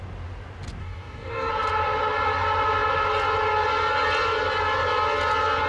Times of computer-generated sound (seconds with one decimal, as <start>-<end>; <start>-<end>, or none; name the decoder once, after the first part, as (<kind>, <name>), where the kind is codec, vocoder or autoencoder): 0.8-1.5 (codec, DAC)